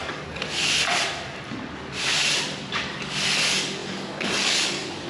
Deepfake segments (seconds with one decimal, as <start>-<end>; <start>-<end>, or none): 0.0-0.4; 2.7-5.1